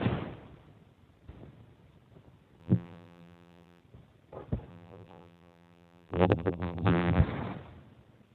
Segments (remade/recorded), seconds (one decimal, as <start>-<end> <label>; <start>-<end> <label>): 0.0-2.6 recorded; 2.6-3.8 remade; 3.8-4.7 recorded; 4.7-7.2 remade; 7.2-8.3 recorded